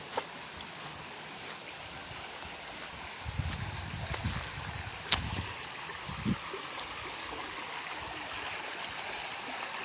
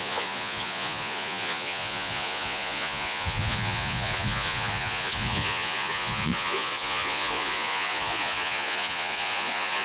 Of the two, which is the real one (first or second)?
first